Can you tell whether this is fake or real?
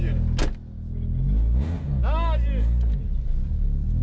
real